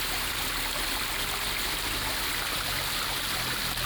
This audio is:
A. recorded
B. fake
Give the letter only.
A